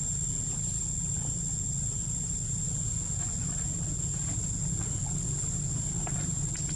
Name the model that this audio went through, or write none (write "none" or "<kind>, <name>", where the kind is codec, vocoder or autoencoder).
none